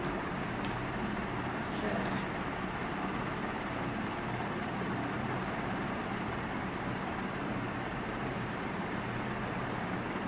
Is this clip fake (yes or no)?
yes